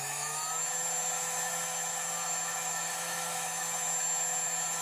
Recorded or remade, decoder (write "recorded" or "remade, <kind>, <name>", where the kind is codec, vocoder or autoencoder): remade, autoencoder, DAC-VAE